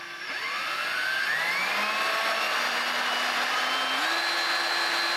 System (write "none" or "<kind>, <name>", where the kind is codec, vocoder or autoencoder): none